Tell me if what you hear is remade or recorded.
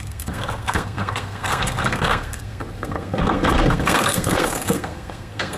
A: remade